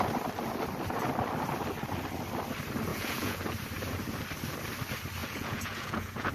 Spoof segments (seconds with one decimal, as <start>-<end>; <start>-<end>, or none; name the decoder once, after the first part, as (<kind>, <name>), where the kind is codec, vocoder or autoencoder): 2.9-3.4 (vocoder, Vocos); 5.2-6.3